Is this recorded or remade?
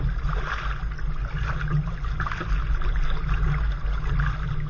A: recorded